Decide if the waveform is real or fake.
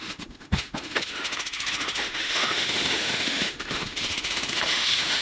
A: fake